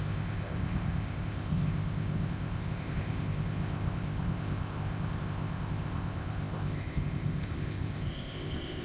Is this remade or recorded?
remade